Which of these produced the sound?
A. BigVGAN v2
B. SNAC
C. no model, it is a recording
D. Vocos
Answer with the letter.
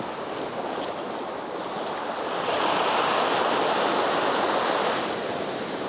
C